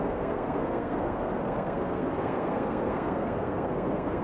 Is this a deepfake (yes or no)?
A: yes